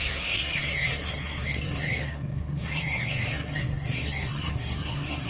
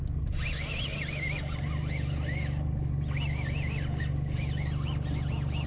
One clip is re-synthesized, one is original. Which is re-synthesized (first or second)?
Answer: first